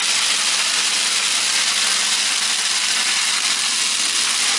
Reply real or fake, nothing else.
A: real